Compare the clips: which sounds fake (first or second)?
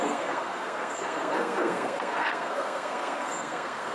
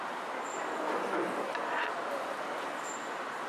first